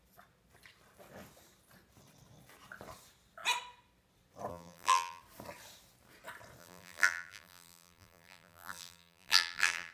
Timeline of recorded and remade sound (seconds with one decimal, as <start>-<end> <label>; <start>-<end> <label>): 0.0-4.5 recorded; 4.5-5.2 remade; 5.2-6.6 recorded; 6.6-9.9 remade